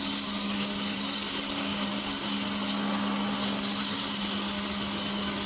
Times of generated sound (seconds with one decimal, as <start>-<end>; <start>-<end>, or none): none